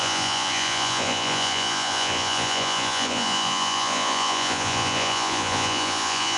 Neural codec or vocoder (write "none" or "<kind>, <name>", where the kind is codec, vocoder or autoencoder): vocoder, Vocos